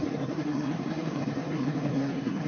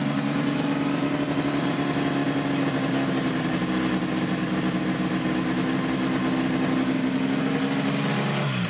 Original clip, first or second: second